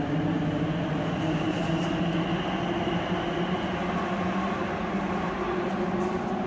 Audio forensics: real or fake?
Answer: real